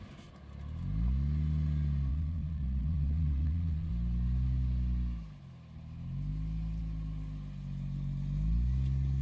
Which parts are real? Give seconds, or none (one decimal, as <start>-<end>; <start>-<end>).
0.0-2.1; 3.9-9.2